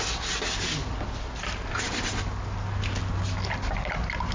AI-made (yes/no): no